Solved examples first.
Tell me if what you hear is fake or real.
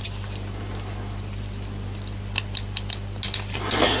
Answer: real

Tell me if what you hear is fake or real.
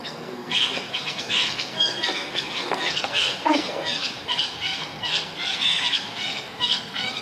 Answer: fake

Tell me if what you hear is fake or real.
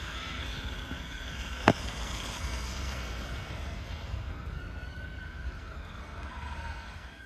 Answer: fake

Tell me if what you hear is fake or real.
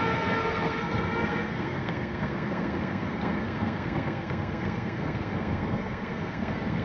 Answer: fake